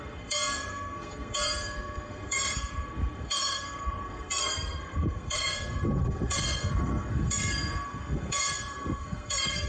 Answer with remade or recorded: remade